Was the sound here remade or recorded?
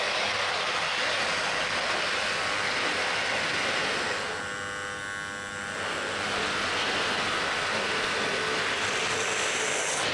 recorded